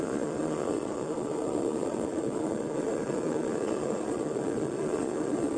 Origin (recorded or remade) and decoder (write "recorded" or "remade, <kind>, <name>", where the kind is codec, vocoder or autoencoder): remade, vocoder, Vocos